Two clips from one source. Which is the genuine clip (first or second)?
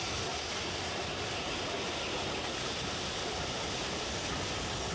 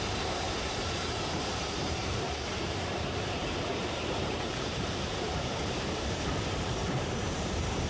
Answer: first